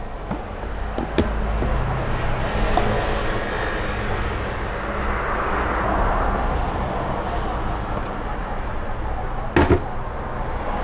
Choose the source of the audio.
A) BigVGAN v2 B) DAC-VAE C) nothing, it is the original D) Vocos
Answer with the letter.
C